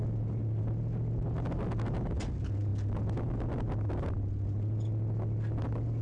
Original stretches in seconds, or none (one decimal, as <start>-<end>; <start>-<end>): 0.0-6.0